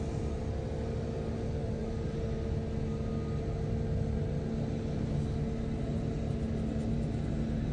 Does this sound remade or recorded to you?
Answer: recorded